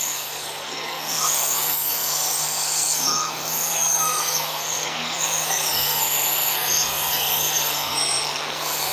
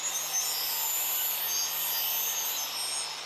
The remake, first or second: first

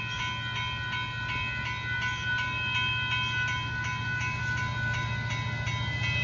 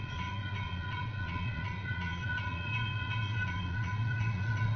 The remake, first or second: second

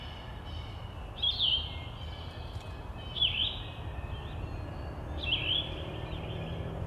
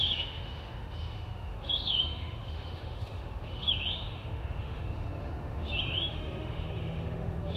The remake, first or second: second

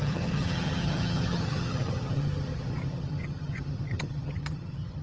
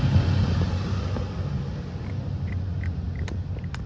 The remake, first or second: first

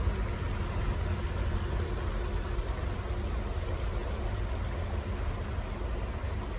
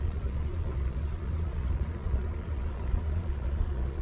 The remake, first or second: second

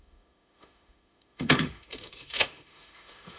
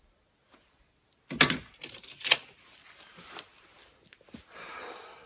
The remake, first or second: first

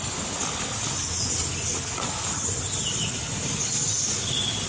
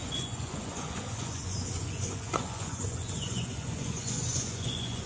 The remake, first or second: second